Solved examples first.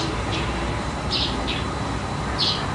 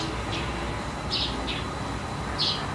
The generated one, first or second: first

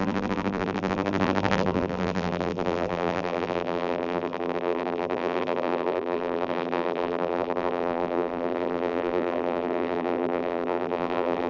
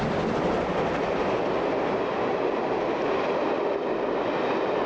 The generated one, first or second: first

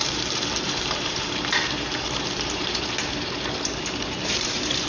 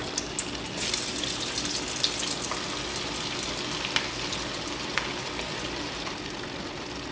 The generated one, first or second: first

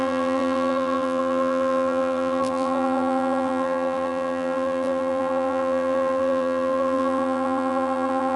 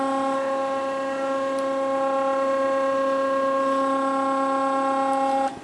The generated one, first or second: first